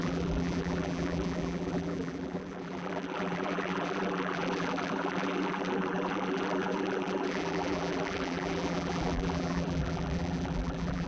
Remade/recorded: remade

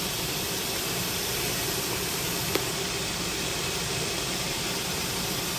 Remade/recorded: remade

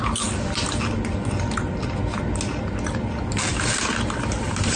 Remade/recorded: recorded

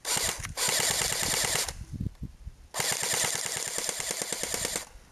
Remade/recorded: recorded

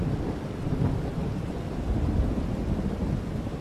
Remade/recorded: recorded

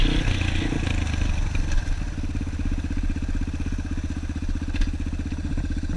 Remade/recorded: recorded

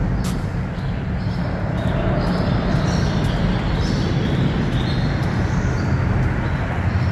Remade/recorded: recorded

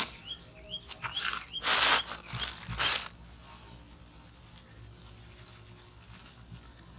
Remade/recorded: recorded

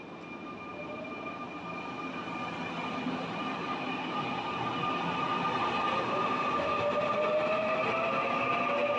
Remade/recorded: recorded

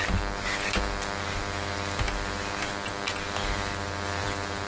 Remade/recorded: recorded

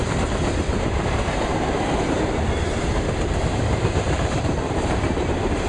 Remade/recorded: remade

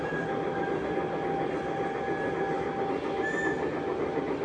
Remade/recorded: recorded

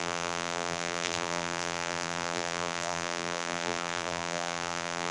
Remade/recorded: remade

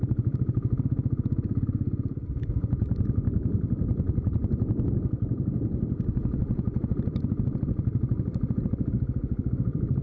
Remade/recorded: remade